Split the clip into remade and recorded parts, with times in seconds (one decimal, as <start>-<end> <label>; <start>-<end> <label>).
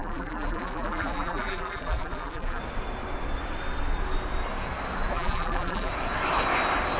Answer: 0.0-2.6 remade; 2.6-5.1 recorded; 5.1-5.9 remade; 5.9-7.0 recorded